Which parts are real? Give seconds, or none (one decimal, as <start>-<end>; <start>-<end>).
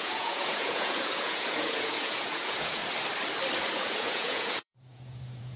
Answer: 2.8-3.7